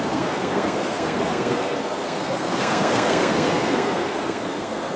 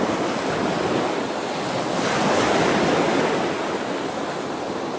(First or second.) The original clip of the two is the second